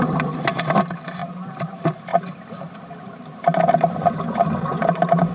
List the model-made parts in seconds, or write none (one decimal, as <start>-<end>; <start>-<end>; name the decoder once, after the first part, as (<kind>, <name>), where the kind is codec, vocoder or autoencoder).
1.2-1.7 (vocoder, BigVGAN v2)

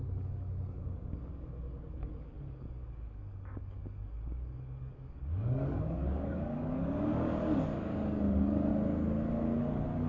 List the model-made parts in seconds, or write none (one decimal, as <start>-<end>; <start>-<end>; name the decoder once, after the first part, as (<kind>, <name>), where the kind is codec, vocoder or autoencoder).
0.0-8.7 (codec, DAC); 9.6-10.1

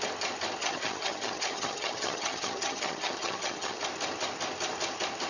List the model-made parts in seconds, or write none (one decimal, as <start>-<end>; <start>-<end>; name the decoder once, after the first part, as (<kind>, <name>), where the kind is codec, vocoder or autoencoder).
0.6-3.8 (vocoder, HiFi-GAN)

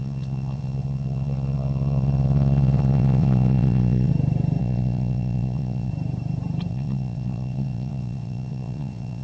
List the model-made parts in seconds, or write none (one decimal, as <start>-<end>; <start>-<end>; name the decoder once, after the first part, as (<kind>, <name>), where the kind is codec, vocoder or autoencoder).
0.0-4.1 (vocoder, WaveNeXt); 4.6-5.9; 6.7-9.2

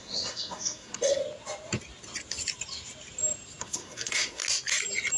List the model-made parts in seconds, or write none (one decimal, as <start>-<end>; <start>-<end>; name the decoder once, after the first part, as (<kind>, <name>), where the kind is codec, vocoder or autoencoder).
0.0-1.2 (codec, SNAC); 3.6-4.4

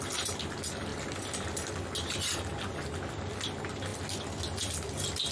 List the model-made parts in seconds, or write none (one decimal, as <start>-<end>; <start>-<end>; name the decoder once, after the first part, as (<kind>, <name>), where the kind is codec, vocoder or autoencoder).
none

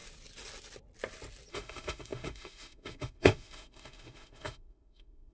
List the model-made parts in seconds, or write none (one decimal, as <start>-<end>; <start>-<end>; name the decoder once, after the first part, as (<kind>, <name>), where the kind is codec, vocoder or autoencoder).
1.5-5.3 (autoencoder, DAC-VAE)

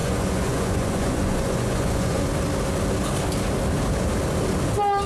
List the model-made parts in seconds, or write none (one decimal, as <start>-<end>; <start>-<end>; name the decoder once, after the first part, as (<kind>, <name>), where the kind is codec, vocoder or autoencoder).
0.0-2.3 (vocoder, Vocos)